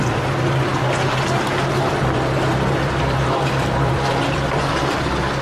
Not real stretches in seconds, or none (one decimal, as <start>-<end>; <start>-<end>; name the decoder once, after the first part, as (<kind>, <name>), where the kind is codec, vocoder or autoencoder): none